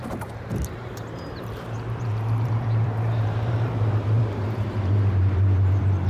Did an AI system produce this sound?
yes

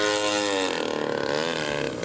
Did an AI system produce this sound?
no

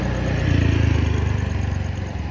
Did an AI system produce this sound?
no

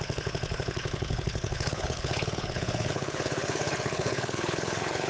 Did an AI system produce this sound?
yes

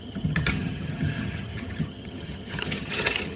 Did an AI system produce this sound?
yes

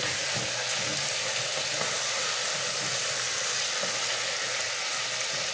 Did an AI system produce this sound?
no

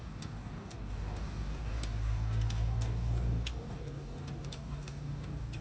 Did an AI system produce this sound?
yes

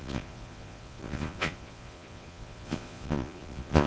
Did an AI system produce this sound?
yes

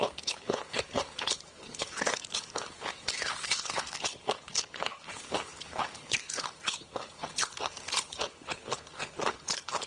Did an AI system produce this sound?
yes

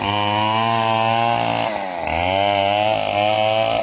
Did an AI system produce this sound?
no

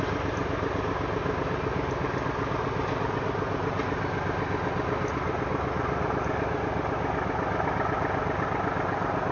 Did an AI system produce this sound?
yes